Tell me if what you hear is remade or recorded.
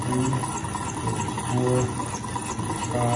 recorded